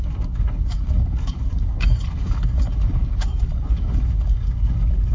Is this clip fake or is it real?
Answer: fake